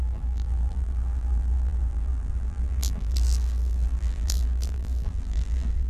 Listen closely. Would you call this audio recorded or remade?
remade